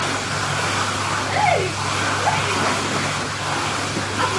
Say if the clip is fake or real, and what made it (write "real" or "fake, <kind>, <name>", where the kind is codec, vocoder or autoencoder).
real